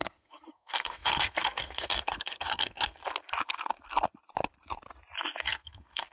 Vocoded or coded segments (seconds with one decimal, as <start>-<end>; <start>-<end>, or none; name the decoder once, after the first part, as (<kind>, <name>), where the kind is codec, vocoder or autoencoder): 0.0-3.0 (codec, SNAC); 5.4-6.1